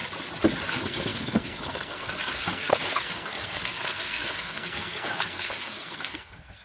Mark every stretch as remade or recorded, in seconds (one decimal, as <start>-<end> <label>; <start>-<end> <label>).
0.0-0.6 recorded; 0.6-6.6 remade